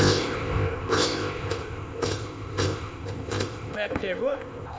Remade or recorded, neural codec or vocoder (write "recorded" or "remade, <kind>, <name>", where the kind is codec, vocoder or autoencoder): remade, codec, ZipCodec